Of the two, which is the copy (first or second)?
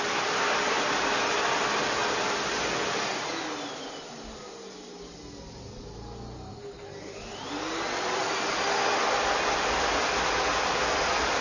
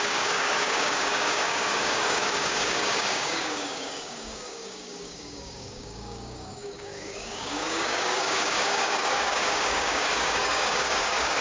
second